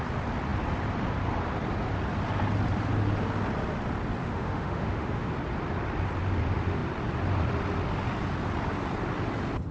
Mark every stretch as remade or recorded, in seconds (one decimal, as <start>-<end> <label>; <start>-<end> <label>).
0.0-4.2 recorded; 4.2-5.3 remade; 5.3-9.7 recorded